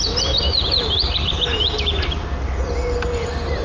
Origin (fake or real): real